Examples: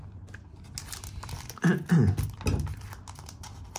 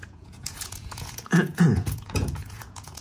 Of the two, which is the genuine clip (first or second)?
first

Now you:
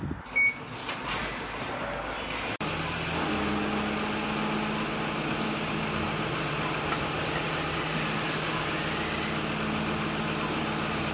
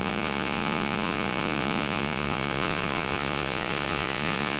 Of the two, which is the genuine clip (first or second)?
first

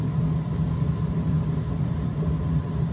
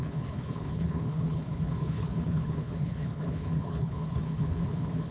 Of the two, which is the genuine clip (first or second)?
first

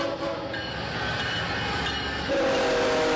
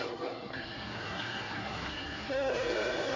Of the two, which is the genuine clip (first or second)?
first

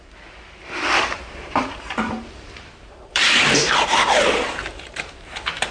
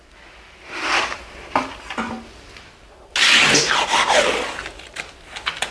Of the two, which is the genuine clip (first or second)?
second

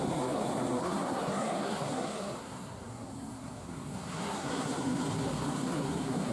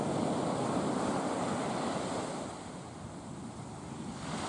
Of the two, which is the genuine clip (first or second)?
second